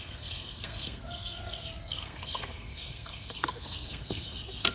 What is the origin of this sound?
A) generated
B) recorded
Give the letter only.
A